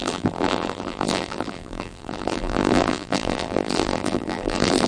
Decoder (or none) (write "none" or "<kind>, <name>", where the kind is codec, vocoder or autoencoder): vocoder, BigVGAN v2